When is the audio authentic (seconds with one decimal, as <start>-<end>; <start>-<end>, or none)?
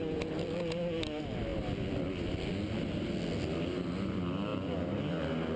0.0-5.6